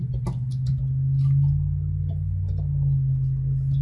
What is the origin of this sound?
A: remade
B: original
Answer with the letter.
B